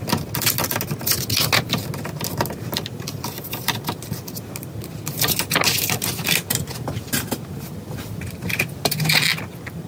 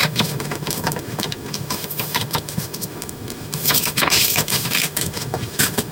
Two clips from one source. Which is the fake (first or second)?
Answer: second